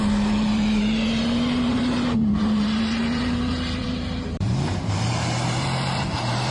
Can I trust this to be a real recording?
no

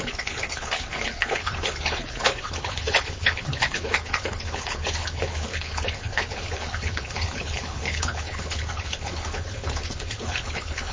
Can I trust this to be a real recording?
no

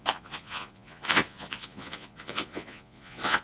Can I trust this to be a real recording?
no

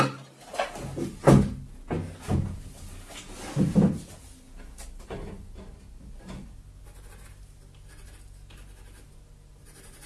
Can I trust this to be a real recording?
yes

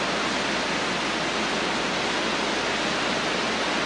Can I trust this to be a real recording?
yes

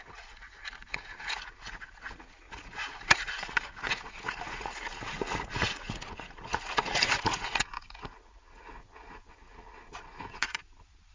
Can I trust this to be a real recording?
no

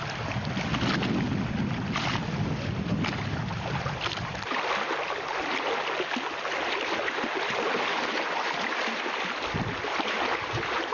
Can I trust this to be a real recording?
yes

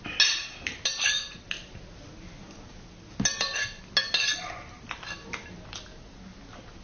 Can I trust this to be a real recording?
yes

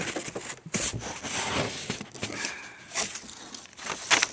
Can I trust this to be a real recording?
yes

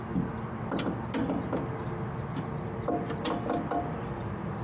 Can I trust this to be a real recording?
yes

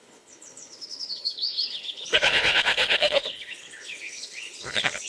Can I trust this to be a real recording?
no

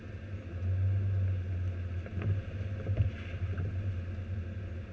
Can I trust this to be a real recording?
yes